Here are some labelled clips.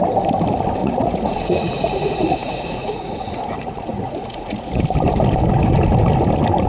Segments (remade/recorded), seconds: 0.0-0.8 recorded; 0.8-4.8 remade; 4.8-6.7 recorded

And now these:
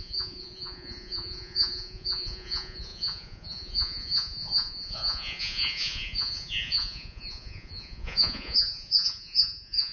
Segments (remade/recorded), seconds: 0.0-9.9 remade

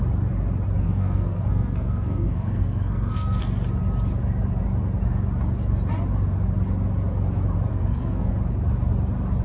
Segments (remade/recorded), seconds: 0.0-0.8 recorded; 0.8-3.4 remade; 3.4-7.7 recorded; 7.7-8.3 remade; 8.3-9.4 recorded

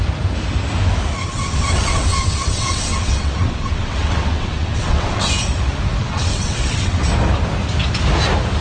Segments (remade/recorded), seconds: 0.0-1.2 recorded; 1.2-5.3 remade; 5.3-6.0 recorded; 6.0-7.0 remade; 7.0-8.6 recorded